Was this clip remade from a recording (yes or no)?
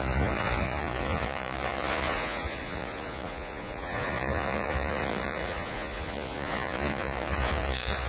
yes